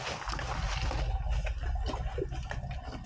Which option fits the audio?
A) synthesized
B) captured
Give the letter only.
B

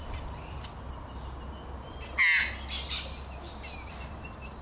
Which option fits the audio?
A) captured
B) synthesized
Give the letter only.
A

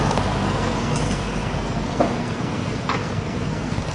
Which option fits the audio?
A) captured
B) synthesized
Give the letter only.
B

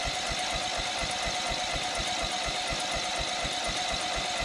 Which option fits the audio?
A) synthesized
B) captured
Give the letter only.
B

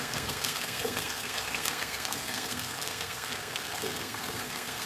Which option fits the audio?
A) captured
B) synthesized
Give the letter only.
B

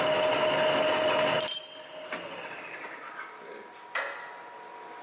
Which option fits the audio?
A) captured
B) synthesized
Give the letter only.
A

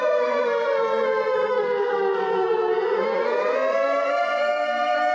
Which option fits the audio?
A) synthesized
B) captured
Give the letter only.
A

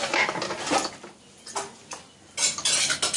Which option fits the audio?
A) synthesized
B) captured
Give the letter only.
B